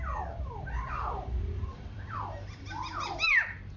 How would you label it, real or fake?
fake